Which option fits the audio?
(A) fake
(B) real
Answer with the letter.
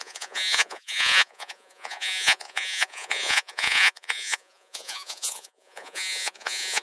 A